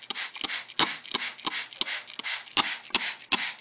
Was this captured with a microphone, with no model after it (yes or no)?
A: yes